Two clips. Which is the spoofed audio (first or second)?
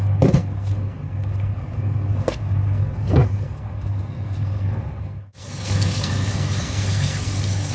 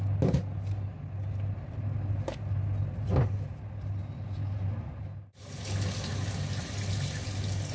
first